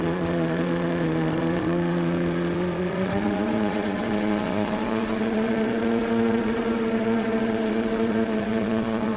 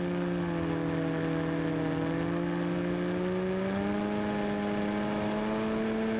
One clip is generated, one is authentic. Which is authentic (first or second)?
second